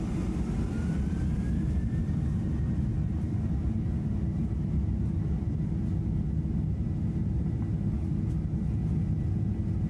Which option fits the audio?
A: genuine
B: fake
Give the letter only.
A